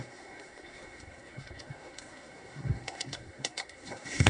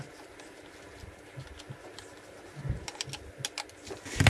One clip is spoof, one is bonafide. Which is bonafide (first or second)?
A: second